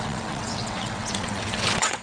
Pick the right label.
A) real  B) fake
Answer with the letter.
B